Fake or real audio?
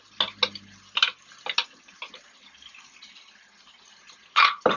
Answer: real